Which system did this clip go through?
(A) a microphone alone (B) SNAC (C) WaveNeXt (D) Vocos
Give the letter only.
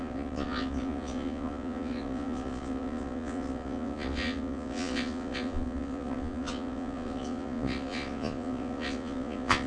D